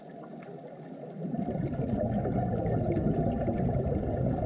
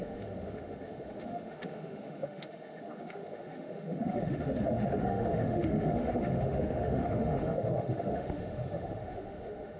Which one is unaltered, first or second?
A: first